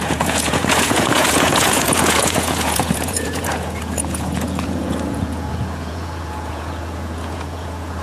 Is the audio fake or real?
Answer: fake